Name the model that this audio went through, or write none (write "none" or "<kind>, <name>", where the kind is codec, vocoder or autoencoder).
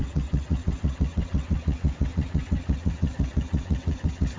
vocoder, WaveNeXt